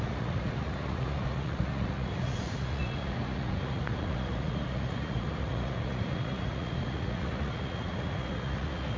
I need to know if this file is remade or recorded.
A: remade